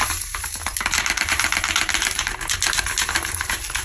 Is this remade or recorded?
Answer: remade